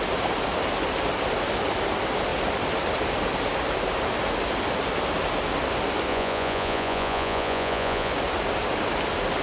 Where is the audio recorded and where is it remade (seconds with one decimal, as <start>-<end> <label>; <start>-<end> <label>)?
0.0-6.1 recorded; 6.1-8.1 remade; 8.1-9.4 recorded